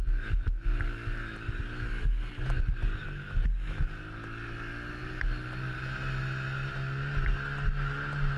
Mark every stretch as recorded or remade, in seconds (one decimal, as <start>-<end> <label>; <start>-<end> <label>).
0.0-8.4 recorded